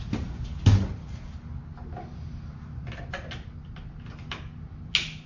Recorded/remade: recorded